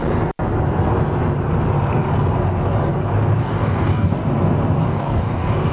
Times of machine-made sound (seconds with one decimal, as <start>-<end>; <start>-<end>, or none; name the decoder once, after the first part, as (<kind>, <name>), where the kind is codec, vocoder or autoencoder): 3.4-4.2 (codec, DAC); 4.8-5.7